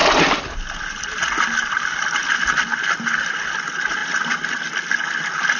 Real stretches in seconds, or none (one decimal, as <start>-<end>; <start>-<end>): 0.0-5.6